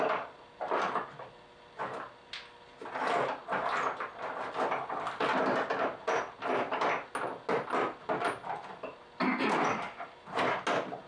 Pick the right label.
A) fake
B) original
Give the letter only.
B